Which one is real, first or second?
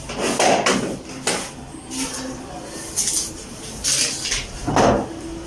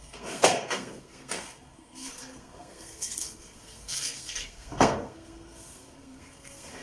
first